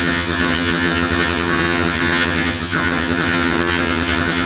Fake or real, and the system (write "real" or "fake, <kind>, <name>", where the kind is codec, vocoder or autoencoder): fake, vocoder, HiFi-GAN